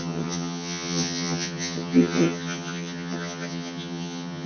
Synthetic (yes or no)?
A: yes